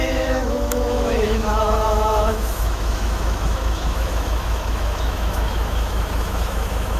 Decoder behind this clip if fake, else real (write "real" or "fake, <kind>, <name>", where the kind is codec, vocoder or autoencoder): fake, autoencoder, DAC-VAE